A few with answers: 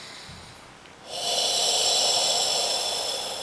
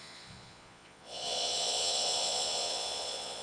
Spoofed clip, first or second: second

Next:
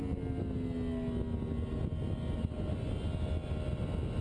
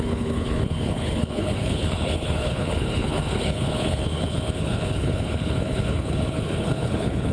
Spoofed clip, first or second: second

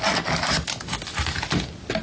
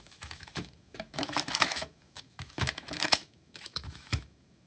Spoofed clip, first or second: second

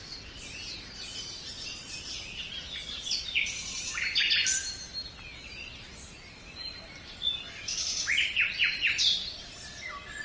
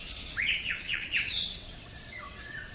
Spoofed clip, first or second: second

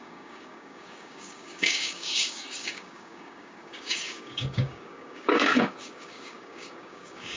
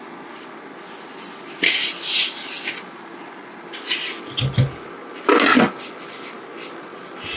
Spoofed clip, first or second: first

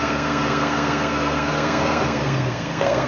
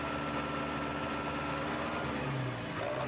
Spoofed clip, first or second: first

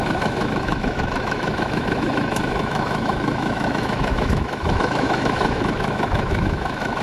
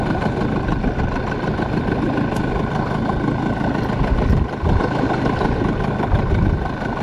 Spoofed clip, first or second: first